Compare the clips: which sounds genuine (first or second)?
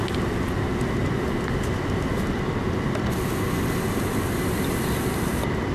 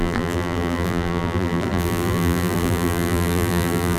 first